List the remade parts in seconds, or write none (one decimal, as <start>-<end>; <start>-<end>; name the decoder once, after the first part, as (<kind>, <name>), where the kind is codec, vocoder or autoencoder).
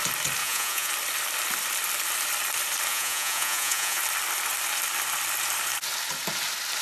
0.4-0.9 (vocoder, Vocos); 2.9-4.0